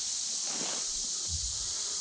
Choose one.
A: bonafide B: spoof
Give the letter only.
A